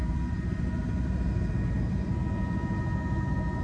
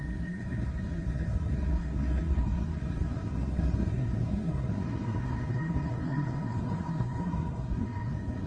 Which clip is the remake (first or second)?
second